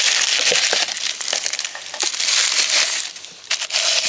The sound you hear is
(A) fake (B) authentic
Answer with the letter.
B